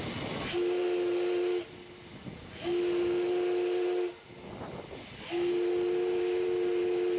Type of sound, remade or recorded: recorded